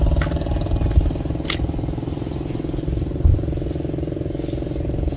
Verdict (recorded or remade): recorded